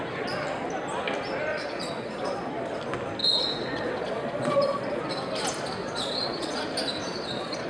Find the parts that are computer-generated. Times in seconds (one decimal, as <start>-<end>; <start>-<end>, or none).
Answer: 1.5-2.5; 3.2-5.0; 5.8-6.6; 7.0-7.7